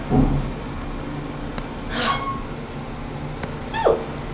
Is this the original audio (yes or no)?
yes